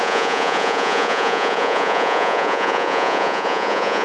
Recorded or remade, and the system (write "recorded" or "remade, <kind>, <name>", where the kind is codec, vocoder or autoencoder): remade, vocoder, Vocos